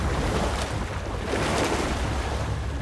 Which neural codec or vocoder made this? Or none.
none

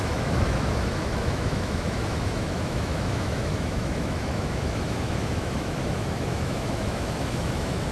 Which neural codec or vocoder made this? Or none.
autoencoder, DAC-VAE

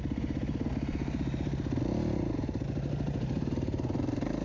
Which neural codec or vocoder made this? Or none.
none